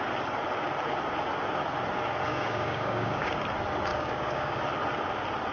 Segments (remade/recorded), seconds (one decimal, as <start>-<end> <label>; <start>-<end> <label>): 0.0-2.3 recorded; 2.3-3.3 remade; 3.3-3.9 recorded; 3.9-4.6 remade; 4.6-5.5 recorded